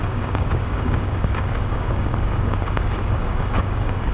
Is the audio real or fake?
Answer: fake